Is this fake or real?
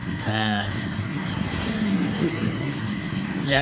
fake